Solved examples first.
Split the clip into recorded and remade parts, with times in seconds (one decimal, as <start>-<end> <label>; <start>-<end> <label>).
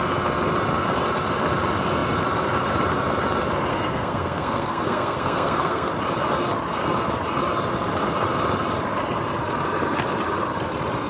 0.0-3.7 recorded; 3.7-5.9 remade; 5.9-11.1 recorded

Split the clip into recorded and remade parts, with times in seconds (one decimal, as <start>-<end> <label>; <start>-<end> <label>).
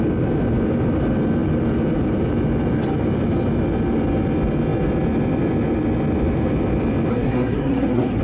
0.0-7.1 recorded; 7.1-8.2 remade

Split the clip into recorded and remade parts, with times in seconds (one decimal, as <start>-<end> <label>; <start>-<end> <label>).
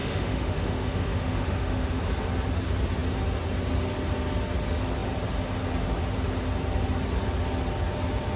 0.0-2.0 remade; 2.0-8.4 recorded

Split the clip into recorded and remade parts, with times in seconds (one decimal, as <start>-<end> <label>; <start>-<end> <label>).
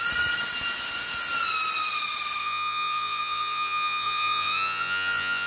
0.0-2.4 recorded; 2.4-5.5 remade